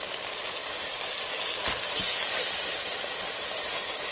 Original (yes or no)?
yes